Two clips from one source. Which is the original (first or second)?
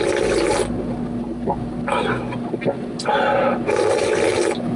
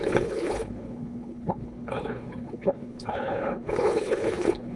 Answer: first